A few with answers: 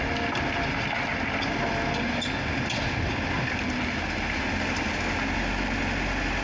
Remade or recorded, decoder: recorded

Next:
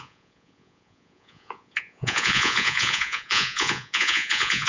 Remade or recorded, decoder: remade, vocoder, Vocos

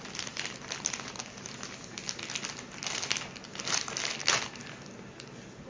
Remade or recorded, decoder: recorded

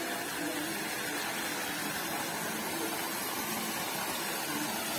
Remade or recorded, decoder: recorded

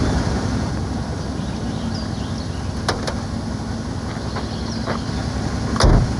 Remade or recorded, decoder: recorded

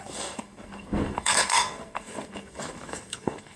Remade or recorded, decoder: remade, codec, SNAC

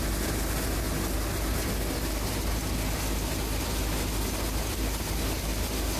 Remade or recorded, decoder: recorded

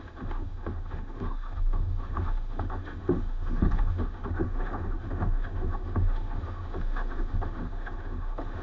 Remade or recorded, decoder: remade, autoencoder, DAC-VAE